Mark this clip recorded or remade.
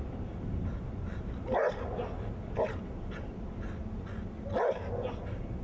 recorded